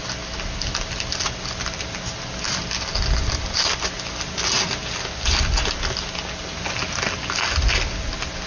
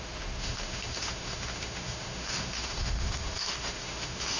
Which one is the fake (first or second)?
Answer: second